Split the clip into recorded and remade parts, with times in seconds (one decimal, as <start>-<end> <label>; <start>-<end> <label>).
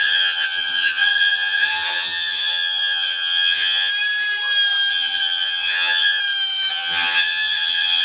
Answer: 0.0-3.9 remade; 3.9-4.9 recorded; 4.9-6.2 remade; 6.2-6.7 recorded; 6.7-8.0 remade